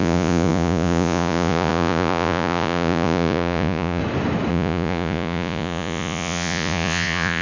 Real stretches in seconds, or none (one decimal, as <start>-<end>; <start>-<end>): 4.0-4.5